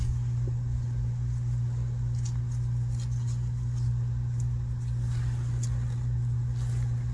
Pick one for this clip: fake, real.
real